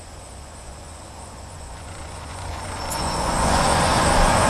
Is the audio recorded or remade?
remade